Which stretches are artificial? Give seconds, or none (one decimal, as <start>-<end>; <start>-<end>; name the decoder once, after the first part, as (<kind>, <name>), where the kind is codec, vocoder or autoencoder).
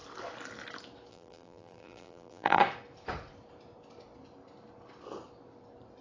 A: 1.1-2.6 (vocoder, BigVGAN v2)